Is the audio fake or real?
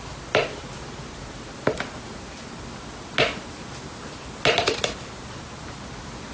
real